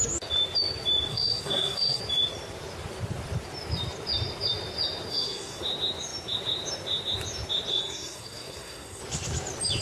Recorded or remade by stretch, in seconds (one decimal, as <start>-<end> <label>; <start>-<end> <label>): 0.0-1.1 recorded; 1.1-2.0 remade; 2.0-5.1 recorded; 5.1-5.6 remade; 5.6-7.7 recorded; 7.7-9.0 remade; 9.0-9.8 recorded